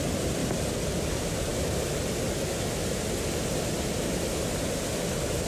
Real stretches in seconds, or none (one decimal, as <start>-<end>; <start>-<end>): 0.0-5.5